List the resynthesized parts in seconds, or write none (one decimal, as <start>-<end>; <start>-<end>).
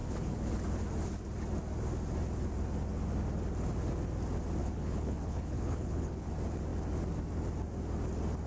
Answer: 0.0-0.5; 4.6-6.3